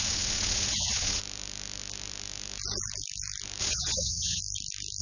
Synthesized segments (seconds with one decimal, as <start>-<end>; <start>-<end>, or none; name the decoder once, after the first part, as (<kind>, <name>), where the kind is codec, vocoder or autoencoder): 0.0-1.2 (vocoder, WaveNeXt); 3.6-4.4